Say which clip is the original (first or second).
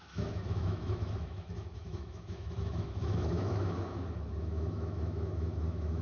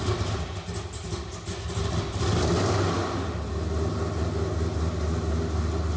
second